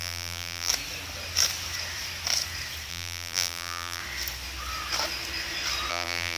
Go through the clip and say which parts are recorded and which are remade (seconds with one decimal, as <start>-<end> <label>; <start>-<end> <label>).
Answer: 0.0-0.7 remade; 0.7-2.9 recorded; 2.9-4.0 remade; 4.0-5.9 recorded; 5.9-6.4 remade